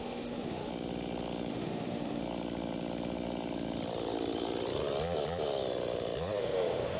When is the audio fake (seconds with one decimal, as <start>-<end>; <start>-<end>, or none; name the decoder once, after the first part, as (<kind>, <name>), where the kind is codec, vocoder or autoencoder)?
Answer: 0.0-0.7 (autoencoder, DAC-VAE); 1.5-2.2; 6.4-7.0